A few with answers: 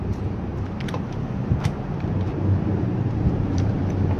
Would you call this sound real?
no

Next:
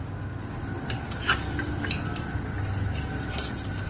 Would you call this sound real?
yes